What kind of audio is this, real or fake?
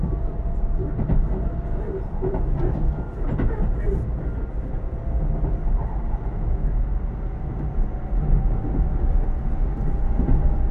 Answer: real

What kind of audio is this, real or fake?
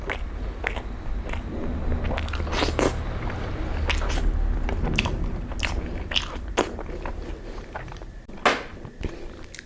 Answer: real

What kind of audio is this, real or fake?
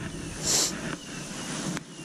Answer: real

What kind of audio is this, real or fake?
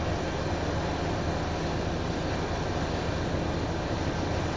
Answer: real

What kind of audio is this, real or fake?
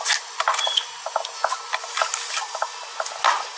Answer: real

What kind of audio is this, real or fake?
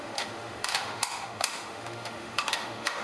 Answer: fake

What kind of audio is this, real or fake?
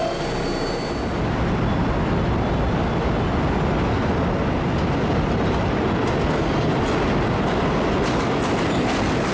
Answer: real